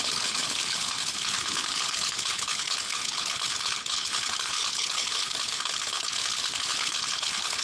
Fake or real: fake